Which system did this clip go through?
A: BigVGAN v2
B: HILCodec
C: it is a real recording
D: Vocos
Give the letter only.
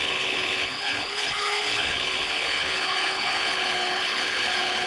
B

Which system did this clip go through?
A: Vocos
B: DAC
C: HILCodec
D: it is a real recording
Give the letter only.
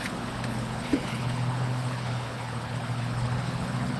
C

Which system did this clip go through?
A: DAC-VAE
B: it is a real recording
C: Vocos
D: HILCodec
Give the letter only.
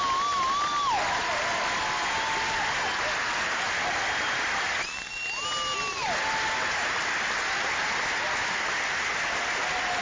B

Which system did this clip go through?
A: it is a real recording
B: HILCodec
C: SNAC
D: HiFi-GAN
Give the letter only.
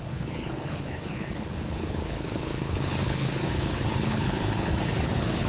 B